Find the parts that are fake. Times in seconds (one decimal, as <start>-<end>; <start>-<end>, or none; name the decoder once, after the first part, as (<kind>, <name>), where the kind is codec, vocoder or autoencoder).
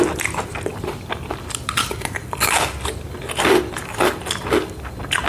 none